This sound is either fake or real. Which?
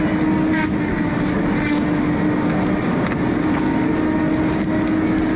real